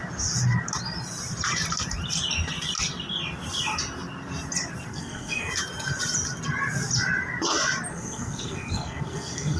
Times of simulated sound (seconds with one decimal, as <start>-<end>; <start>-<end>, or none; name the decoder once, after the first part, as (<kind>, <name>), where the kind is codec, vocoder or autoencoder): 4.9-5.5 (codec, SNAC); 7.9-9.6